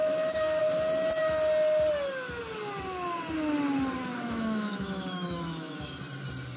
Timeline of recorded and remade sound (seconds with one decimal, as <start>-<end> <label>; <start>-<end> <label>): 0.0-0.6 remade; 0.6-4.0 recorded; 4.0-6.0 remade; 6.0-6.6 recorded